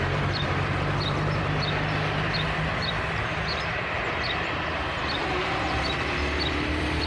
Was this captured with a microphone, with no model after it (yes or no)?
no